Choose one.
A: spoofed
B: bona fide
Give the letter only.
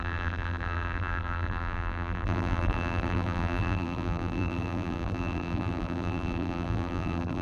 A